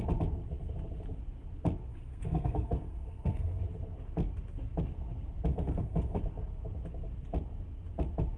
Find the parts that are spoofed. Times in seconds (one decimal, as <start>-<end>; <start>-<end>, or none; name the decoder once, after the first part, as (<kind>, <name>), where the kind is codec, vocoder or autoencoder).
1.9-3.6 (codec, SNAC); 5.5-6.2